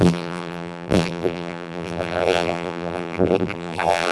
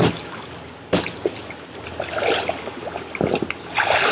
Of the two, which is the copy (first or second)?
first